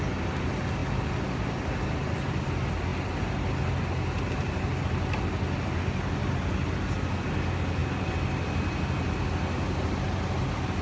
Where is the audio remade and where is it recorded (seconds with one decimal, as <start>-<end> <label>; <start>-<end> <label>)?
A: 0.0-0.8 recorded; 0.8-2.5 remade; 2.5-10.8 recorded